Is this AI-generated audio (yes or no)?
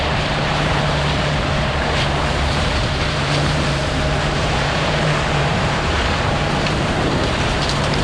yes